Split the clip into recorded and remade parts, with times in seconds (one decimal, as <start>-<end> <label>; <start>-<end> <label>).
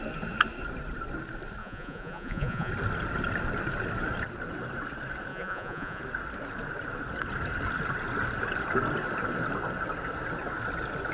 0.0-1.6 recorded; 1.6-2.7 remade; 2.7-5.3 recorded; 5.3-6.0 remade; 6.0-11.1 recorded